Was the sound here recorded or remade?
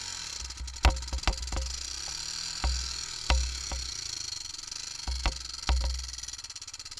recorded